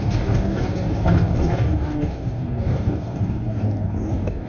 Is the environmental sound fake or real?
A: fake